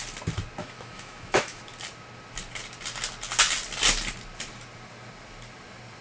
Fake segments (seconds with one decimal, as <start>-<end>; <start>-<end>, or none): 0.6-1.6